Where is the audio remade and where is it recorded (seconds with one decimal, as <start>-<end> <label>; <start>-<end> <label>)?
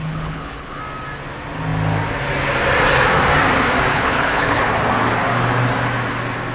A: 0.0-0.8 remade; 0.8-3.9 recorded; 3.9-4.7 remade; 4.7-6.5 recorded